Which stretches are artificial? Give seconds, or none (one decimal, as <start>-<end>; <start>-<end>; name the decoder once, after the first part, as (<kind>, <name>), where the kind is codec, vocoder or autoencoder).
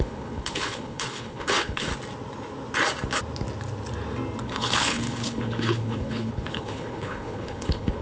0.0-1.9 (codec, HILCodec); 4.4-8.0